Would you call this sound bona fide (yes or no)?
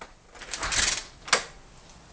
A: yes